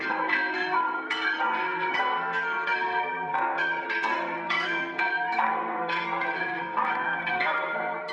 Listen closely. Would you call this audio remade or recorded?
remade